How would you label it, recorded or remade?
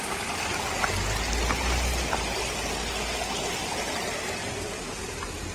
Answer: recorded